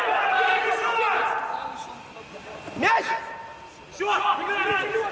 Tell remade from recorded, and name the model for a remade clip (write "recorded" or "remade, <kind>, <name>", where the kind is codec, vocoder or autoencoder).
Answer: recorded